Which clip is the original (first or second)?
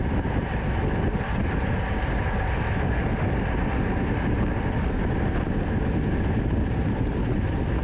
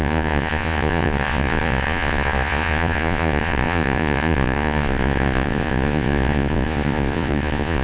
first